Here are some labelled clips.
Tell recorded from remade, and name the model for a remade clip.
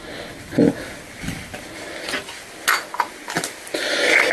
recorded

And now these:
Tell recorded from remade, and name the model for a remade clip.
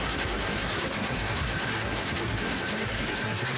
remade, codec, SNAC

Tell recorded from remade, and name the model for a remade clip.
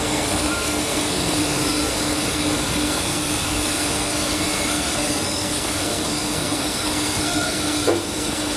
remade, codec, SNAC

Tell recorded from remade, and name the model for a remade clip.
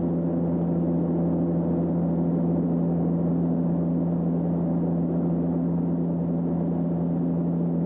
recorded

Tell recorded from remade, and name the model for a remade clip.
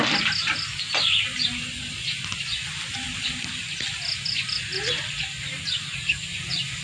recorded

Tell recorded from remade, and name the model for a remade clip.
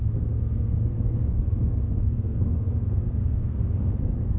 remade, codec, SNAC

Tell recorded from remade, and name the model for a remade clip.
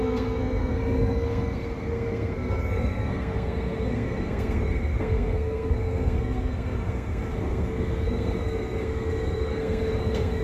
remade, codec, SNAC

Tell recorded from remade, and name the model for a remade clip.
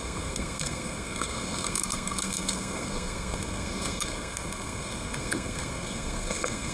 remade, codec, SNAC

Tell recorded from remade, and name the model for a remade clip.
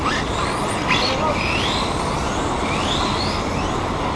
recorded